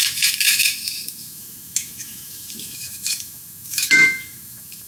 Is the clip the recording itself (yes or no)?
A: no